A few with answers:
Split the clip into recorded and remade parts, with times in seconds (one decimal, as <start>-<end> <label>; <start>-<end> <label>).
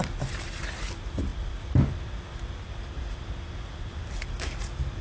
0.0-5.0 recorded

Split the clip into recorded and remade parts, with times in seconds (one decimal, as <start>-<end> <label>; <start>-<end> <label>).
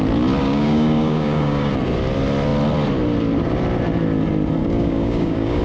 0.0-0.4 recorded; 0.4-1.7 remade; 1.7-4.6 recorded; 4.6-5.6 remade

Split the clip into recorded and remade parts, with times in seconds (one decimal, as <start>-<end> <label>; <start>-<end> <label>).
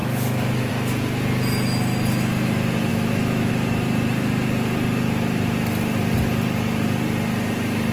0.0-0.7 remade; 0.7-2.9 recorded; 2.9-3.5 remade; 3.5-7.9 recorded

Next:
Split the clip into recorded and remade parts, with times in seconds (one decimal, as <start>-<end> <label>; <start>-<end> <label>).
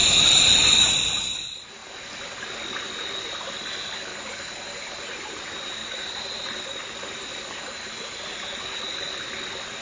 0.0-0.9 remade; 0.9-4.1 recorded; 4.1-8.6 remade; 8.6-9.8 recorded